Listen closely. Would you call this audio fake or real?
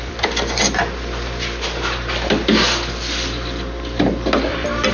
real